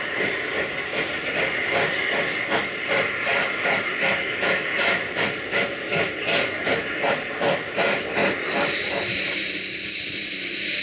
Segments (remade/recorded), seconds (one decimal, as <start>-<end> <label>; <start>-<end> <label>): 0.0-8.2 recorded; 8.2-8.9 remade; 8.9-10.8 recorded